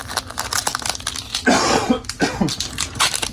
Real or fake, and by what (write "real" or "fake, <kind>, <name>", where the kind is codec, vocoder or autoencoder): real